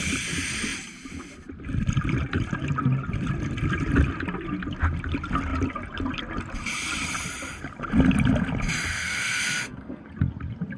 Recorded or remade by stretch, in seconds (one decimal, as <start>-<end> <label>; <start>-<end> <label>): 0.0-8.9 recorded; 8.9-10.0 remade; 10.0-10.8 recorded